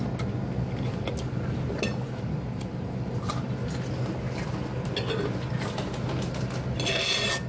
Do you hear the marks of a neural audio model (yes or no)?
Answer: no